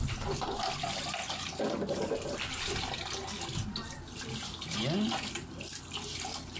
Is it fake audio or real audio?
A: real